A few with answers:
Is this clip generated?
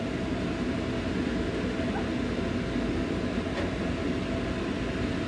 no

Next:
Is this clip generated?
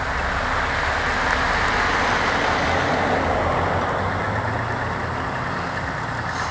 no